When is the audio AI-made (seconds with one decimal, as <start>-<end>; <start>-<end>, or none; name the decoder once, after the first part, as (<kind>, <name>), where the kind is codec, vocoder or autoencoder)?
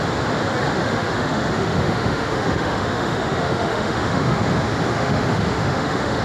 0.8-4.5 (autoencoder, DAC-VAE); 4.9-6.2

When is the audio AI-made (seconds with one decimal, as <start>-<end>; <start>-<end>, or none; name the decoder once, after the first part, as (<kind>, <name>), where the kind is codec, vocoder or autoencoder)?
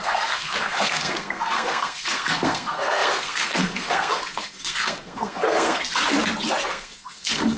0.0-5.8 (codec, SNAC); 6.7-7.6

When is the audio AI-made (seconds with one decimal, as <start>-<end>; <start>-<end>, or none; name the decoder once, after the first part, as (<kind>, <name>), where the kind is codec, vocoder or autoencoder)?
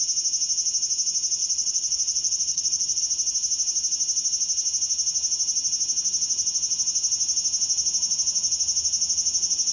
1.4-3.0 (vocoder, Vocos)